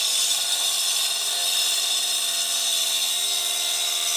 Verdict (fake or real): fake